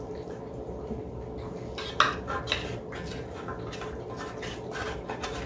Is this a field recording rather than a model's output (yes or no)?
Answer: yes